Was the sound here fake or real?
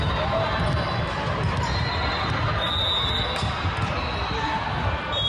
real